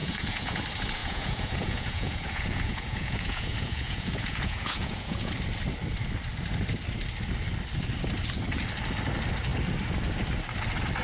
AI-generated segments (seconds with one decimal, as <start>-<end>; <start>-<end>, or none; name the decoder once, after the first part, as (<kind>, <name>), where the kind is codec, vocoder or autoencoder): 0.0-0.6 (vocoder, Vocos); 1.0-5.3